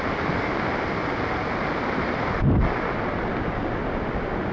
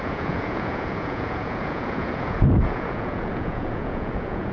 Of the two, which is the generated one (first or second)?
second